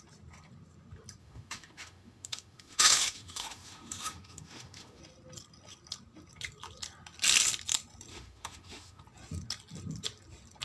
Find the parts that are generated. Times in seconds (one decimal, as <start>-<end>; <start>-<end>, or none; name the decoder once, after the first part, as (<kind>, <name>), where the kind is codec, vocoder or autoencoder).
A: 1.2-5.0 (autoencoder, DAC-VAE); 8.1-9.0